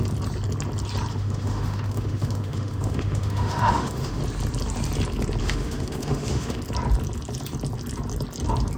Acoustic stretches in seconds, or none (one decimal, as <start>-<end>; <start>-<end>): 0.0-1.1; 4.2-5.4; 6.6-8.8